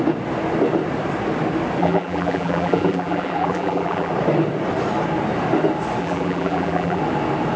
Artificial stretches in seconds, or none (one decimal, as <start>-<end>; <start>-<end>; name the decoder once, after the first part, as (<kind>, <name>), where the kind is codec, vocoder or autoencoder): 1.8-4.1 (vocoder, BigVGAN v2); 6.0-7.0